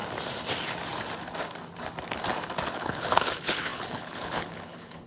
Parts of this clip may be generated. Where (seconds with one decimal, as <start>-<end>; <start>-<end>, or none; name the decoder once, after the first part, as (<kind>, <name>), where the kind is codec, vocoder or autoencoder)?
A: 2.7-5.1 (codec, HILCodec)